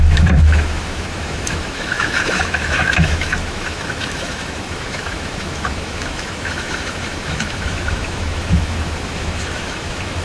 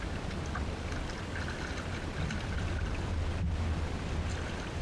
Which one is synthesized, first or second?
first